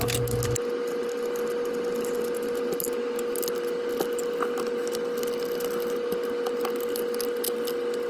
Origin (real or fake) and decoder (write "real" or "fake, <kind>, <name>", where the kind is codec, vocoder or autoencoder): real